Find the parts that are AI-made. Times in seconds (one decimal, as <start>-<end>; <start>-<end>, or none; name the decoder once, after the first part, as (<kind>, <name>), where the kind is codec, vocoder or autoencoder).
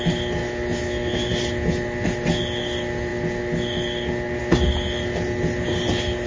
0.4-1.3 (autoencoder, DAC-VAE)